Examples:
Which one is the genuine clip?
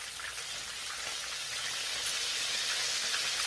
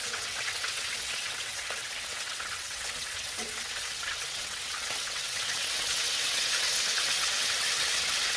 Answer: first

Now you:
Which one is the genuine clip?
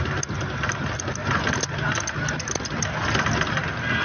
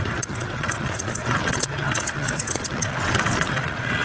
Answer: first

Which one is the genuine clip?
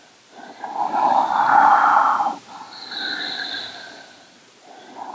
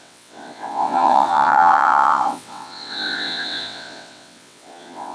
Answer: first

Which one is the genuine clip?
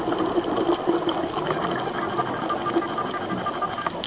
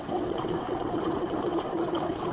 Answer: first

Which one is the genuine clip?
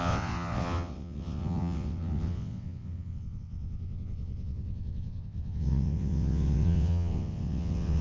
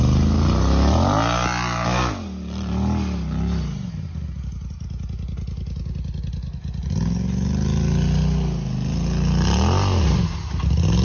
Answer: second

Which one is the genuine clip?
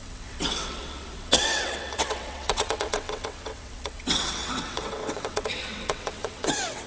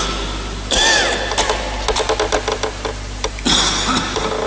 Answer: second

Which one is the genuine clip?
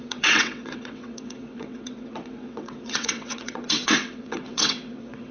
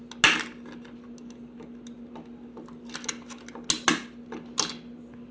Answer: second